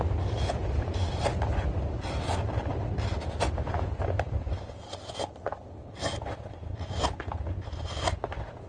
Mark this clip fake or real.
real